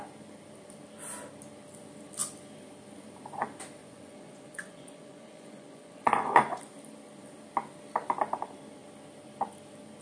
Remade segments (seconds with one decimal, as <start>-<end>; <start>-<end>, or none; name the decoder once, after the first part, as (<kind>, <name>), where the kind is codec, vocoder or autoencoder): 3.8-6.6 (vocoder, Vocos)